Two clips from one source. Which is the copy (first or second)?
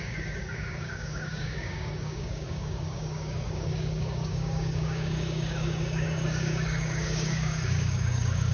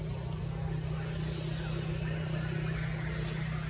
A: first